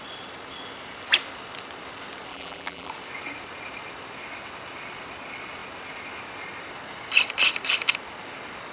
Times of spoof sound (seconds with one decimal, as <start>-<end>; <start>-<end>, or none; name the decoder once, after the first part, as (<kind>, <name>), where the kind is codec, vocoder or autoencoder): 2.3-2.9 (vocoder, BigVGAN v2)